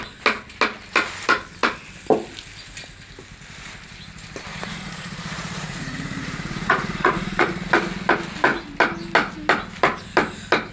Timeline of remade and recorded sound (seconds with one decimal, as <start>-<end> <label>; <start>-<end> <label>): 0.0-4.5 recorded; 4.5-7.5 remade; 7.5-10.7 recorded